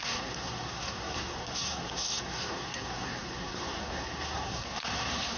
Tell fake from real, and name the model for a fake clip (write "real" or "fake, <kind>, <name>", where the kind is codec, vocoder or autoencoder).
fake, codec, SNAC